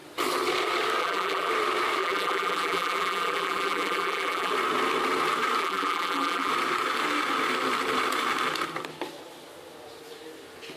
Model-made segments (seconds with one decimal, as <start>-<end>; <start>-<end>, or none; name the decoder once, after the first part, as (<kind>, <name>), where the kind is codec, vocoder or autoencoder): 1.0-1.5 (vocoder, BigVGAN v2); 2.0-4.5; 5.6-6.5

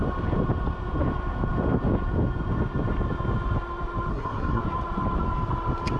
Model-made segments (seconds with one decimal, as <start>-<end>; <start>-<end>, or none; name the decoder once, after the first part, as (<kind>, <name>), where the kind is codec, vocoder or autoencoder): 4.1-4.6 (codec, SNAC)

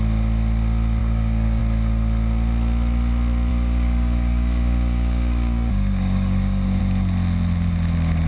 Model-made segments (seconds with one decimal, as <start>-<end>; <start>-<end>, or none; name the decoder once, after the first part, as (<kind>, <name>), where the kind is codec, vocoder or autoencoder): 1.0-1.6 (codec, DAC); 3.5-6.8

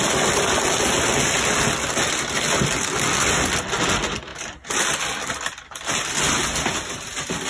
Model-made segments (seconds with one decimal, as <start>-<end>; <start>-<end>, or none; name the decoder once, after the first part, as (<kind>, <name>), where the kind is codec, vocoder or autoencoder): none

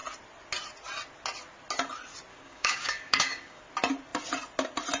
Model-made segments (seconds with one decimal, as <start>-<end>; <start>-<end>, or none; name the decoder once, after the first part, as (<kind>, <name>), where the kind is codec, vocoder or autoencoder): 2.3-3.6 (codec, DAC)

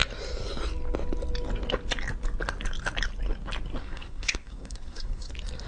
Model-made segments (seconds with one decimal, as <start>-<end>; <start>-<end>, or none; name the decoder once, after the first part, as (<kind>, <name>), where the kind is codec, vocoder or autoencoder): 3.8-5.3 (codec, SNAC)

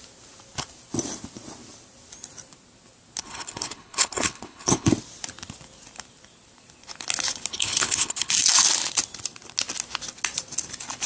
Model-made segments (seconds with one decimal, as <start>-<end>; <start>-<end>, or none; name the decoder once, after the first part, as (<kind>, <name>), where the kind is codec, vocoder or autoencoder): 3.2-4.9 (codec, HILCodec); 7.5-8.3

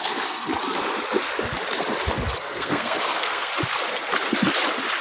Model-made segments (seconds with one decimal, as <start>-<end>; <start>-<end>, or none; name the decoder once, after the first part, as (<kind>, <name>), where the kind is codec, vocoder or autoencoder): 0.0-0.5 (codec, SNAC); 2.4-3.5